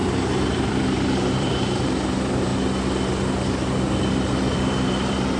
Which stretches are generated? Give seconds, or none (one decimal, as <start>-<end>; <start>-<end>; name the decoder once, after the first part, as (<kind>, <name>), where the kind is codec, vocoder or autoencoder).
0.5-2.5 (vocoder, BigVGAN v2); 4.4-5.4